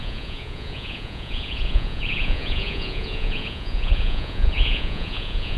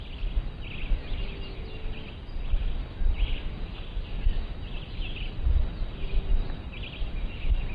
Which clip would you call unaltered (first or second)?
second